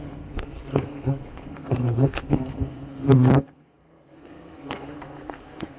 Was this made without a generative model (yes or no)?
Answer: no